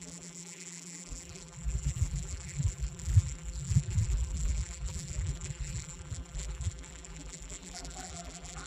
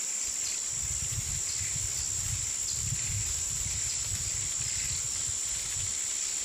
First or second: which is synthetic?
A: first